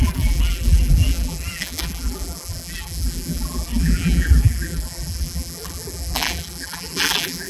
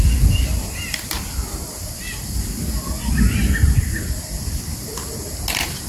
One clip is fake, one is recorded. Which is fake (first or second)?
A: first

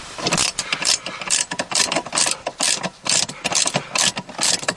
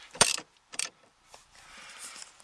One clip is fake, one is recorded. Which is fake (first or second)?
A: second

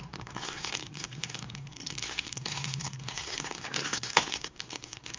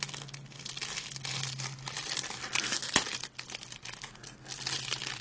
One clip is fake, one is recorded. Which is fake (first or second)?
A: first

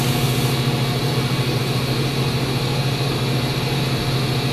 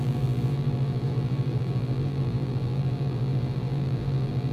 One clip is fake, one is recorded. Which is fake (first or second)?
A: second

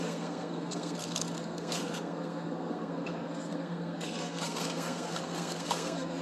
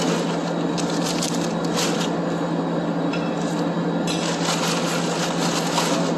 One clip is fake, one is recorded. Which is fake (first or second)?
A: first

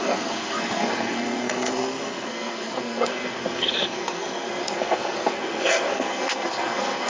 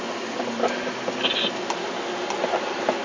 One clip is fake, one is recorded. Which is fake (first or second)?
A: first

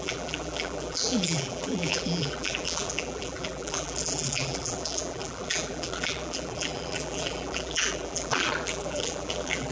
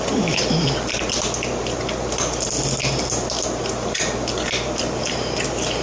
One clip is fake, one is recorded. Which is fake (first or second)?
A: first